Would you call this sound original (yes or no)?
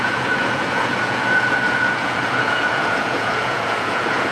no